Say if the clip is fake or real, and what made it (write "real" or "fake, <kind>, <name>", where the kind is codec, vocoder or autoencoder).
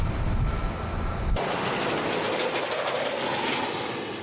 real